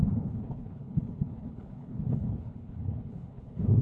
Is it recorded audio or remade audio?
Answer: remade